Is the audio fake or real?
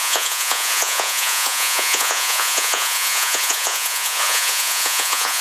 fake